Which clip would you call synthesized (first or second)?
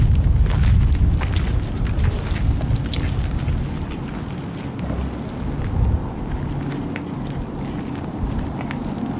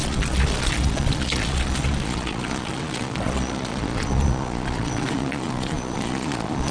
second